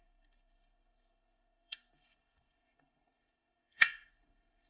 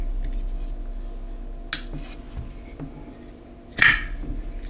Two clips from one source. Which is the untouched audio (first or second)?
second